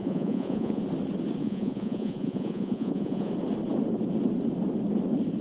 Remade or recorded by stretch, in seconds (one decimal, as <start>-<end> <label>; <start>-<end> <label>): 0.0-0.8 remade; 0.8-1.4 recorded; 1.4-3.3 remade; 3.3-5.4 recorded